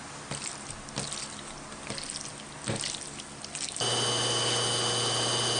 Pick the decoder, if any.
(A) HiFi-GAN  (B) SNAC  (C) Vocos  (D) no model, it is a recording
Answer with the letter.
D